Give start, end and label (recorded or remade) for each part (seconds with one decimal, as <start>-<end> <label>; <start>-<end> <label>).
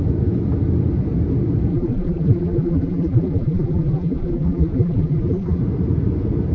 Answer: 0.0-1.7 recorded; 1.7-5.6 remade; 5.6-6.5 recorded